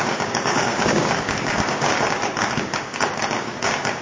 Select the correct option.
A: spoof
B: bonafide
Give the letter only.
A